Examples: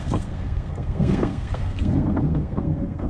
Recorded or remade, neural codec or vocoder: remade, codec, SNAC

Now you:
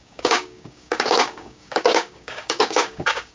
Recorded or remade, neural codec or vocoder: remade, codec, DAC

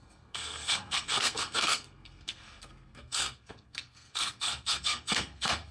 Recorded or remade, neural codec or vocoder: remade, codec, SNAC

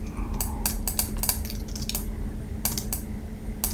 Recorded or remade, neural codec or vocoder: recorded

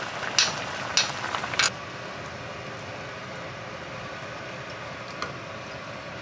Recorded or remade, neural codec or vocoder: recorded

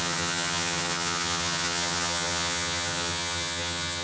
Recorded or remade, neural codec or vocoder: remade, vocoder, HiFi-GAN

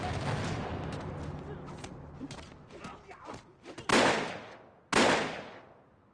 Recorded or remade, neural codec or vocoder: recorded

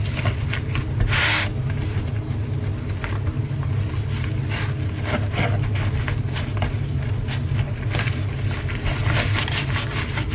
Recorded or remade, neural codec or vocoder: recorded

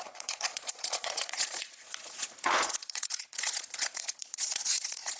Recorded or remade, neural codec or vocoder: remade, vocoder, Vocos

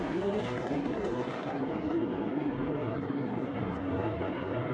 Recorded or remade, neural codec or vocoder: remade, codec, SNAC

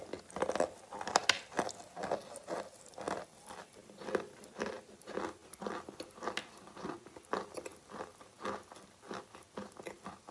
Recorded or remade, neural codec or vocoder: recorded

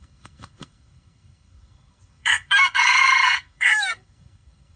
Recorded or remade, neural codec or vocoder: remade, codec, SNAC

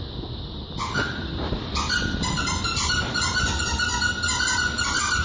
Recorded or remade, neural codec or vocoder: remade, vocoder, BigVGAN v2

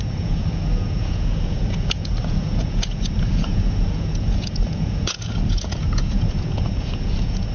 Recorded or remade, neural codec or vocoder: remade, vocoder, Vocos